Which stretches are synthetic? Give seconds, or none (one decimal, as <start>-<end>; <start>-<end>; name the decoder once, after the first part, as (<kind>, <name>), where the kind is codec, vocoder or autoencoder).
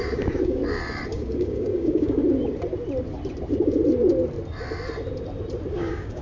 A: 0.0-0.6 (codec, DAC); 1.1-2.2; 5.8-6.2